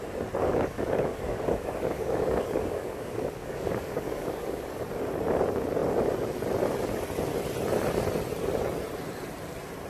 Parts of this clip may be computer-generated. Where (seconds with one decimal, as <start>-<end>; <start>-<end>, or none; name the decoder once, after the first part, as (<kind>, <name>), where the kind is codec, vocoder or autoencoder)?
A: 0.4-4.6 (codec, DAC)